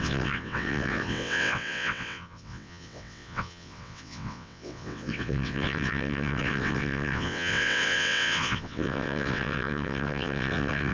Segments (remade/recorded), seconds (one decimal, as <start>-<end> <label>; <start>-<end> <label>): 0.0-10.9 remade